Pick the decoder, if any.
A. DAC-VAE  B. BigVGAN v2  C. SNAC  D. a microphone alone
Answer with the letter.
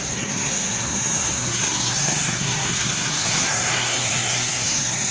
C